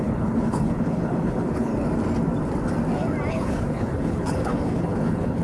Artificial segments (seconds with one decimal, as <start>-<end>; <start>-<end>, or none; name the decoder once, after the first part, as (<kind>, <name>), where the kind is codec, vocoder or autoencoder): 0.0-1.7 (codec, HILCodec); 3.3-5.4